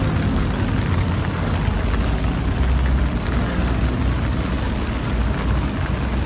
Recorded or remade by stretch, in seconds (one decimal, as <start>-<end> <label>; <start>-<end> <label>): 0.0-6.3 recorded